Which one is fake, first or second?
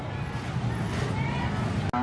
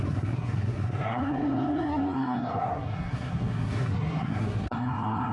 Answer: second